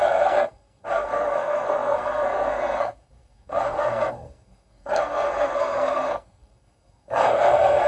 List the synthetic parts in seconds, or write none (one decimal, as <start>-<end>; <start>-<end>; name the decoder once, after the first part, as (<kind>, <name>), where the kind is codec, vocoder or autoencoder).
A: 0.0-7.9 (codec, SNAC)